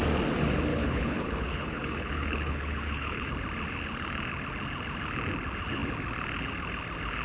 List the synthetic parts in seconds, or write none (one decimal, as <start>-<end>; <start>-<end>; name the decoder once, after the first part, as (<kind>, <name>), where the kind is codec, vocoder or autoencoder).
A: 0.7-3.3 (codec, HILCodec)